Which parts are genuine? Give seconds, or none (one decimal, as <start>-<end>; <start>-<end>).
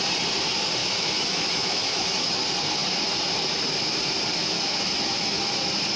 0.0-0.8; 2.4-4.4; 5.4-6.0